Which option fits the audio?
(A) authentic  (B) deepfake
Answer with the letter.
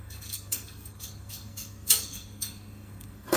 B